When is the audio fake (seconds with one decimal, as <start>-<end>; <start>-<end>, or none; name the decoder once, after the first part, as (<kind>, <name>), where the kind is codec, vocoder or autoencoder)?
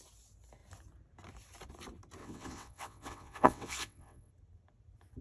2.2-4.3 (vocoder, WaveNeXt)